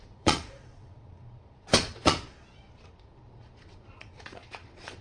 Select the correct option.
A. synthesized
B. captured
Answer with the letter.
A